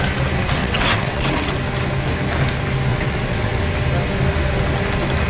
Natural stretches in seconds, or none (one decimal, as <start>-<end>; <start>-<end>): 0.0-0.6; 1.5-2.9; 3.6-5.3